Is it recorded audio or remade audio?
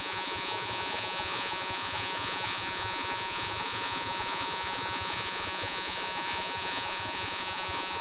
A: remade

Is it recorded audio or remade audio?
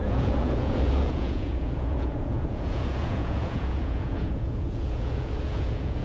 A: remade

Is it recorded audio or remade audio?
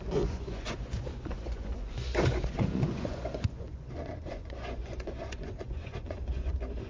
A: remade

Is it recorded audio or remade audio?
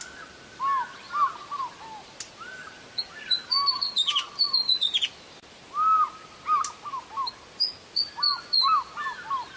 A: recorded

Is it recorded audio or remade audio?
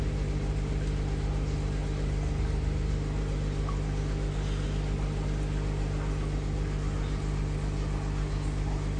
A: recorded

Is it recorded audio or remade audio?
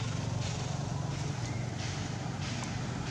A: recorded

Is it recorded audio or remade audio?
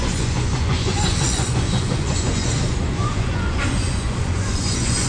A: remade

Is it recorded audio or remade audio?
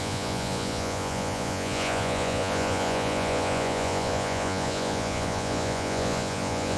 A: remade